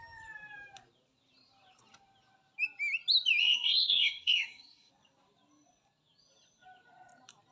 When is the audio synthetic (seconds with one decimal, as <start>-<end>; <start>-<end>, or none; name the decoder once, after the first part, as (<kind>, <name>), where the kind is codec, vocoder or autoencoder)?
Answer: 3.4-4.9 (codec, SNAC)